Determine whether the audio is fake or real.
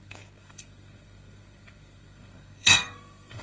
fake